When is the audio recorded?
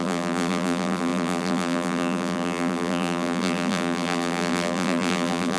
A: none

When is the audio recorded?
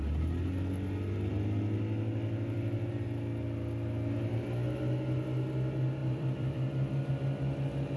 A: 0.0-6.0; 7.1-8.0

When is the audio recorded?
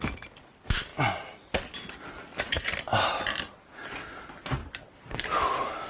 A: 0.0-2.9; 3.5-5.9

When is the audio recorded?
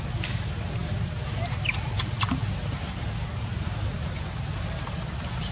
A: 0.0-5.5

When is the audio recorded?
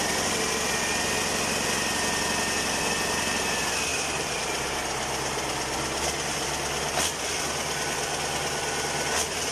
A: 0.0-3.9; 5.4-9.5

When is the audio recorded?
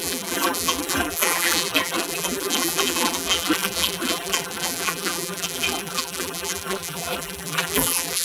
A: none